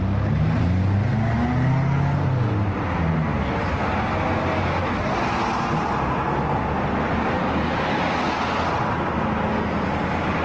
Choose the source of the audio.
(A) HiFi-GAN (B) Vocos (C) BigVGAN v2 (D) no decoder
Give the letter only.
D